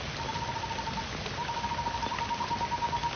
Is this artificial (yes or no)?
no